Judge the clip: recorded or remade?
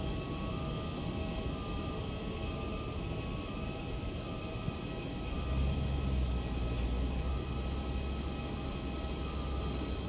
recorded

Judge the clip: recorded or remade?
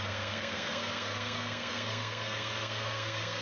remade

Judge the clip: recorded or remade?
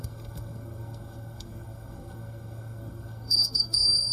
remade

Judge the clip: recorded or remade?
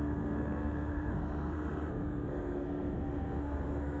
remade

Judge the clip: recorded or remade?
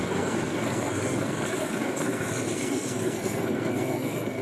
remade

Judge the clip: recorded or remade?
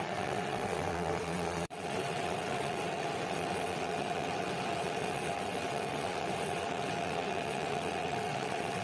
remade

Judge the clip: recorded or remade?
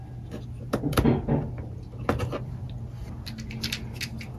recorded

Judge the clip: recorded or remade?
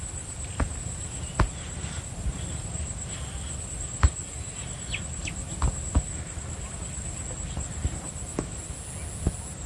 recorded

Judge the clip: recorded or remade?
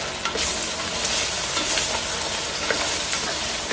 recorded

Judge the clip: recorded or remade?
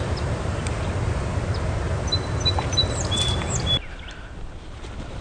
recorded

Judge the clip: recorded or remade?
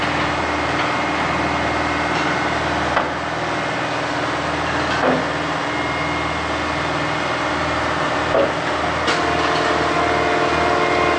recorded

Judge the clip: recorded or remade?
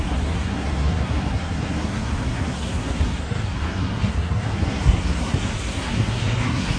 remade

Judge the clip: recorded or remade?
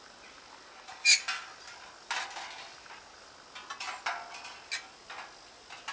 recorded